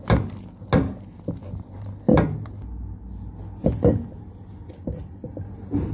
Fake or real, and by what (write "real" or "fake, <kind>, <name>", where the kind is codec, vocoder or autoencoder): real